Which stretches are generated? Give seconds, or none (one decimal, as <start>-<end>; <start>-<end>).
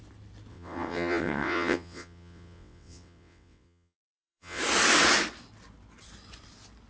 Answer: 0.5-4.6